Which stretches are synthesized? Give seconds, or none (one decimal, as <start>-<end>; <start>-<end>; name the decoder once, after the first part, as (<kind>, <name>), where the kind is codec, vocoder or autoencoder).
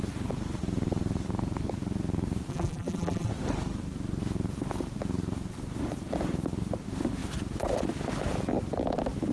2.5-3.3 (vocoder, BigVGAN v2)